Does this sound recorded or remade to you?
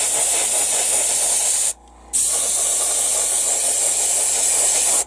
recorded